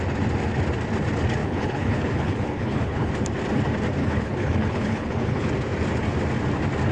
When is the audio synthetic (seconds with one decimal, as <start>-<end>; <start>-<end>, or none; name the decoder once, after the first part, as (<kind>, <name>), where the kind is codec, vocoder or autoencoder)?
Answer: 1.4-3.1 (codec, HILCodec); 4.0-5.5